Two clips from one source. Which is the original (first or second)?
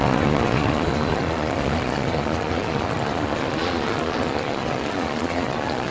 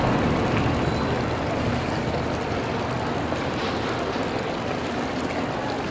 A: second